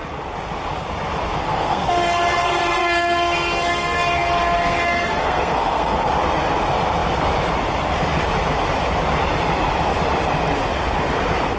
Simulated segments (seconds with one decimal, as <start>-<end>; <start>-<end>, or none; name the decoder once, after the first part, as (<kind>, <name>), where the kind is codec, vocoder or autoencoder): 1.4-6.1 (codec, SNAC)